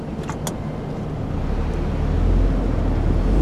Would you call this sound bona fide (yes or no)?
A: yes